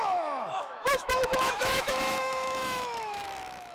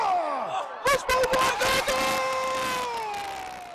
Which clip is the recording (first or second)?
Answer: second